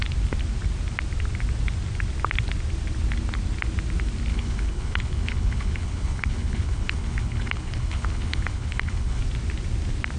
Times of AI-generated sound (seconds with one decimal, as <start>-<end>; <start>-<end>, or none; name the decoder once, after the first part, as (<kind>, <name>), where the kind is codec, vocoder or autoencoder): 4.3-9.2 (codec, HILCodec)